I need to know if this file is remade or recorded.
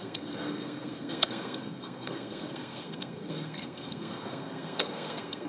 remade